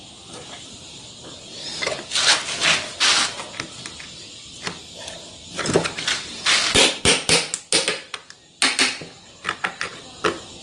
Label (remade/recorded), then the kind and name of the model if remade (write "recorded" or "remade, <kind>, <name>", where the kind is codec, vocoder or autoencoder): recorded